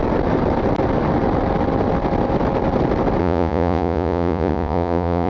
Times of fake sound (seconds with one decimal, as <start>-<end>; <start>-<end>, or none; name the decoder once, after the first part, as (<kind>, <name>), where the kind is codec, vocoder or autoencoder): 3.2-5.3 (vocoder, Vocos)